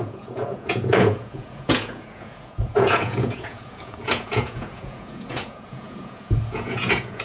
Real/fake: fake